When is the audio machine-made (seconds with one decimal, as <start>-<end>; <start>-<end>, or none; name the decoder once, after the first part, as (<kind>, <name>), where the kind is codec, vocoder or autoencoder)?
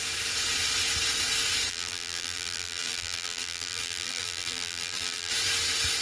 1.7-5.3 (vocoder, BigVGAN v2)